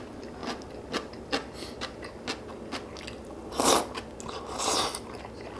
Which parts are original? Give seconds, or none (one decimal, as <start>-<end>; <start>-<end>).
0.0-5.6